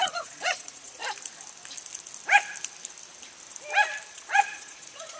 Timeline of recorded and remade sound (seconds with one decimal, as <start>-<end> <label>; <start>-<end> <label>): 0.0-1.0 remade; 1.0-4.1 recorded; 4.1-5.2 remade